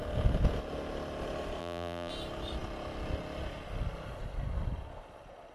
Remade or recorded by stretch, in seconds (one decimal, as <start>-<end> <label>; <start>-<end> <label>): 0.0-1.6 recorded; 1.6-2.1 remade; 2.1-5.5 recorded